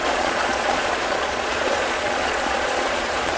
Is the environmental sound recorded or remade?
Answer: remade